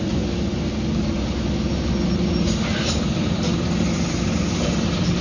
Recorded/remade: recorded